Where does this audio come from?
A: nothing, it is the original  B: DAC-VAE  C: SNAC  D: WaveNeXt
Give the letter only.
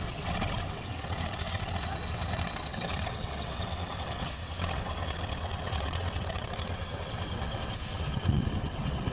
D